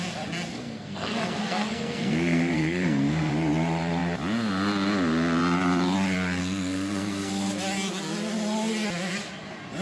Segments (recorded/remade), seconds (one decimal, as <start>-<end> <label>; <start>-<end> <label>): 0.0-0.5 recorded; 0.5-3.3 remade; 3.3-6.4 recorded; 6.4-7.5 remade; 7.5-9.8 recorded